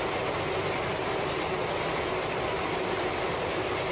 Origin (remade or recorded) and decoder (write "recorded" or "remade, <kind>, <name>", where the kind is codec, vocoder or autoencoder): recorded